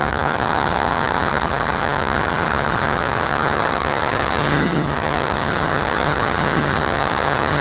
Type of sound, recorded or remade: remade